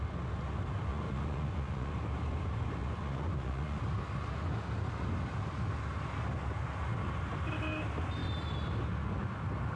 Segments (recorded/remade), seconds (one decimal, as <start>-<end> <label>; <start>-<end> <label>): 0.0-0.9 recorded; 0.9-1.9 remade; 1.9-2.8 recorded; 2.8-3.8 remade; 3.8-9.8 recorded